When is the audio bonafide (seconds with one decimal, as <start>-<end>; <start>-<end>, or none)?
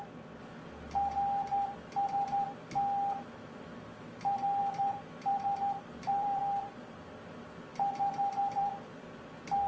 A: 0.0-4.6; 5.3-5.8; 6.4-7.2; 7.7-8.5